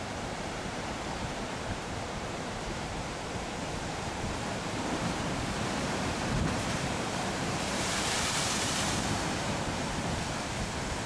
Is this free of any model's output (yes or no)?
no